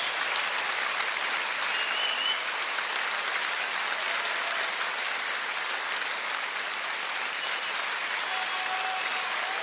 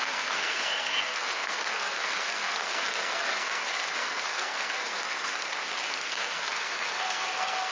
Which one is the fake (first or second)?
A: second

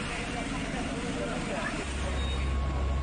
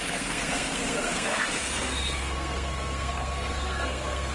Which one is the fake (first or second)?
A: second